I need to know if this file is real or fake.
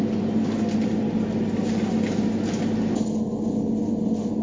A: real